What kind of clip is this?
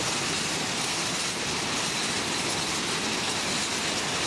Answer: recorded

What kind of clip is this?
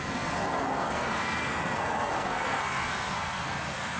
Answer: remade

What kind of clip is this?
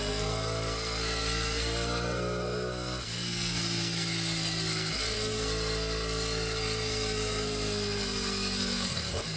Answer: remade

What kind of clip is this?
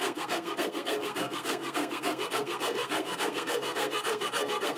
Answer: remade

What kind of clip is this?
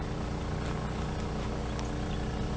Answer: recorded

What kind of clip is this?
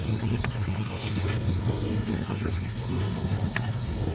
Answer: remade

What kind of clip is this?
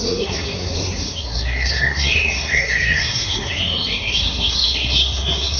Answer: remade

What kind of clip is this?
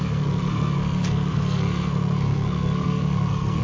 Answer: remade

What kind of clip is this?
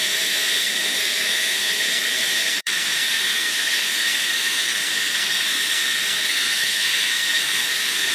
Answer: remade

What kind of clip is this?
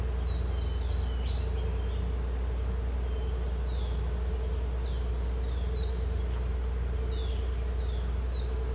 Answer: recorded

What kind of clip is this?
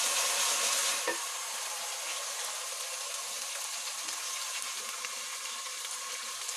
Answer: recorded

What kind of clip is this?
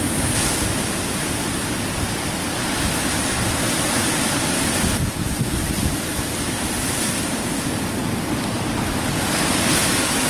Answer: recorded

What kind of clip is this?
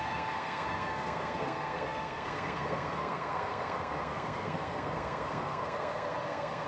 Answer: remade